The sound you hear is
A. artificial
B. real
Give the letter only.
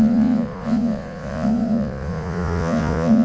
A